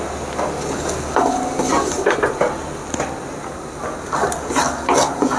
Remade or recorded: recorded